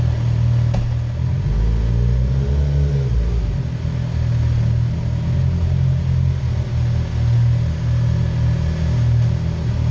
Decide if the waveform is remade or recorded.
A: recorded